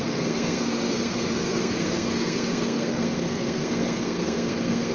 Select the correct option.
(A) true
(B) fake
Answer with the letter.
B